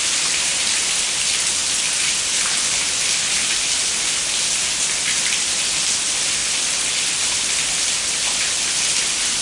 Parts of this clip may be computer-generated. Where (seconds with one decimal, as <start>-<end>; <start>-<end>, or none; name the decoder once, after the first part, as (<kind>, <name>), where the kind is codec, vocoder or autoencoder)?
none